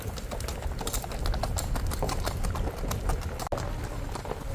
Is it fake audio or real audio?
fake